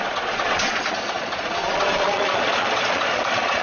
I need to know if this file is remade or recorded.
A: remade